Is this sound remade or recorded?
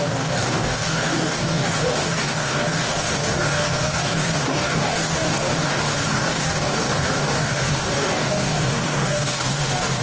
remade